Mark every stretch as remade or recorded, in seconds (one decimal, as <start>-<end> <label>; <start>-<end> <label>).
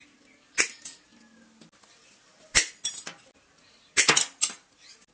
0.0-5.1 recorded